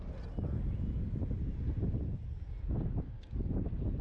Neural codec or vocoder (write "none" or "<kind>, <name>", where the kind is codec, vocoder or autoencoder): none